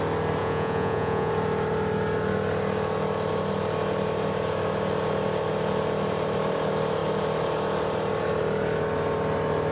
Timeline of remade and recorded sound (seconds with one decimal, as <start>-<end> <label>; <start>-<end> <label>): 0.0-0.4 recorded; 0.4-1.3 remade; 1.3-9.7 recorded